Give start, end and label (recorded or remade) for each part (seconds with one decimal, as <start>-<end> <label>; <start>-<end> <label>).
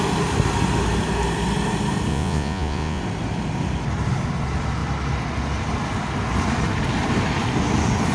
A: 0.0-2.1 recorded; 2.1-3.0 remade; 3.0-8.1 recorded